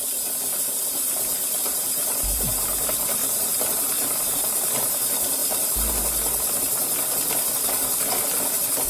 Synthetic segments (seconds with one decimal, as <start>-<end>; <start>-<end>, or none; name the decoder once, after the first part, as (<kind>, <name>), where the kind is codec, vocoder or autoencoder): 1.6-4.6 (vocoder, BigVGAN v2)